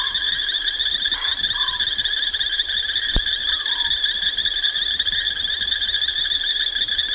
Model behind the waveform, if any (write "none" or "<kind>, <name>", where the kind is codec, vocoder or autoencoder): none